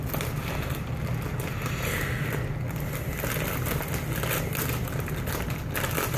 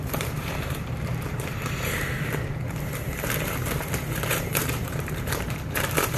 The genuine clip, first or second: first